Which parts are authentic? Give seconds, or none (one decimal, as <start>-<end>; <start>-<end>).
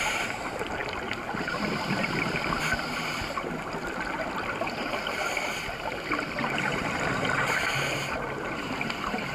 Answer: 0.0-9.3